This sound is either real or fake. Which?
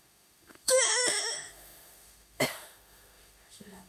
fake